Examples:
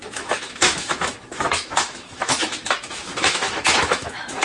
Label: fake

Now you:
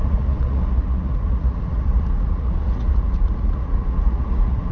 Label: fake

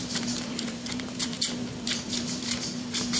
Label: fake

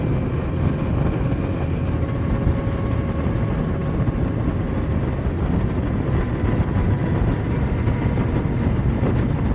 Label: real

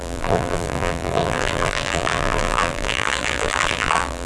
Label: fake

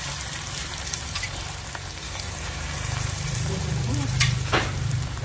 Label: fake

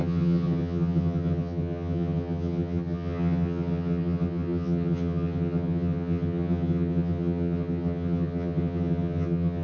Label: fake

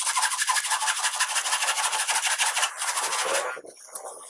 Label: real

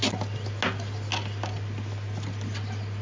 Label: real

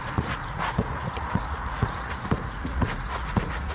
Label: fake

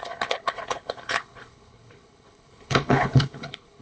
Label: fake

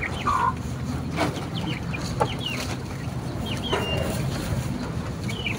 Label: fake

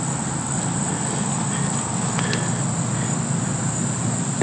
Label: real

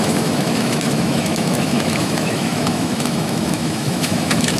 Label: fake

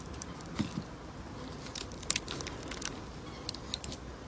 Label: real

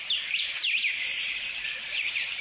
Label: fake